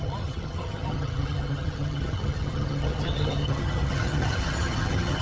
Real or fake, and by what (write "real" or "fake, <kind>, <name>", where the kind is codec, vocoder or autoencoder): fake, vocoder, HiFi-GAN